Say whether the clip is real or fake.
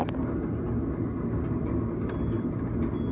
real